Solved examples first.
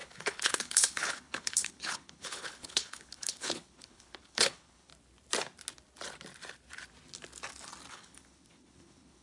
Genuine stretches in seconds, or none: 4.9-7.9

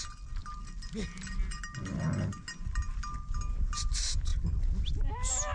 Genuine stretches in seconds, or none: 0.0-5.5